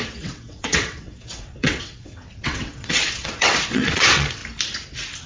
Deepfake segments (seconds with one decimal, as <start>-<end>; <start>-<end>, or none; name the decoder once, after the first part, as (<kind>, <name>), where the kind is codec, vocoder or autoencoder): 0.0-4.4 (vocoder, WaveNeXt)